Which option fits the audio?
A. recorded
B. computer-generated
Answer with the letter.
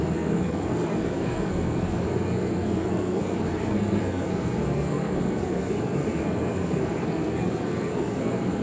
B